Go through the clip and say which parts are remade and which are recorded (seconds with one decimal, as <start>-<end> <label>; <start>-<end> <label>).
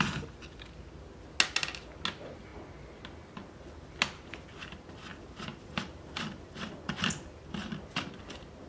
0.0-5.5 recorded; 5.5-7.4 remade; 7.4-8.7 recorded